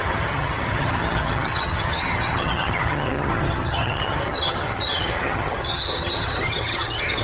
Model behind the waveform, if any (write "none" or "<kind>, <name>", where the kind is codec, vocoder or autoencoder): vocoder, HiFi-GAN